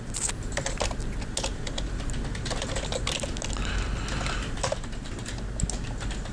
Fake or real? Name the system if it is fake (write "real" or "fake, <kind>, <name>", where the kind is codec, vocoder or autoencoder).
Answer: real